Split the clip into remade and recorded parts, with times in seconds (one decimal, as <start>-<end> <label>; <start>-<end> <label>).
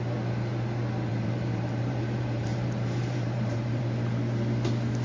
0.0-1.1 recorded; 1.1-3.8 remade; 3.8-5.0 recorded